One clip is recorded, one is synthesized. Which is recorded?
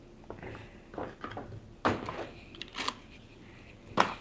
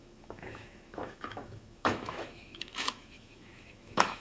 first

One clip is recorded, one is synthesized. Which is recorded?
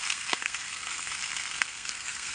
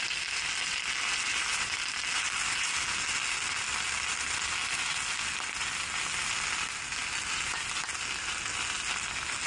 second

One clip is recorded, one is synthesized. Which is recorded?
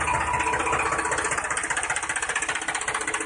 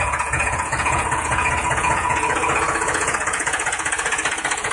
first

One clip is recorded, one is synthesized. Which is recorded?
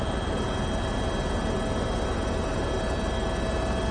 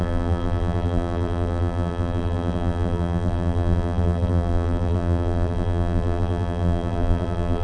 first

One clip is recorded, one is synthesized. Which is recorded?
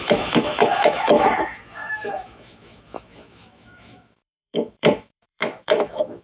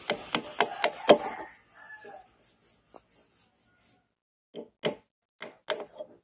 second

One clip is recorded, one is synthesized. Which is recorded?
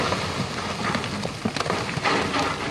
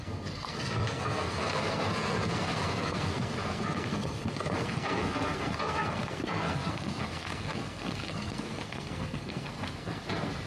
first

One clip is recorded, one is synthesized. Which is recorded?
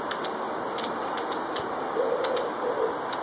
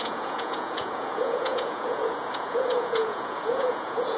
first